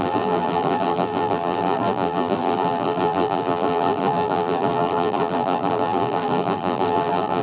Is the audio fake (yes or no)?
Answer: yes